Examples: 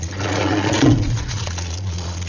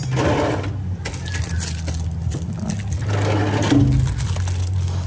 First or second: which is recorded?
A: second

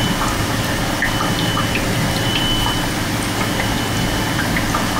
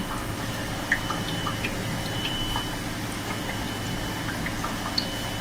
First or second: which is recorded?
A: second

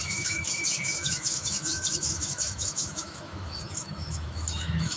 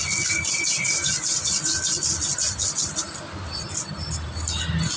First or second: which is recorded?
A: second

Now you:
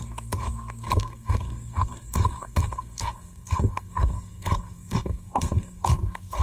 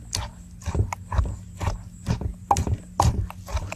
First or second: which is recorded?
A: second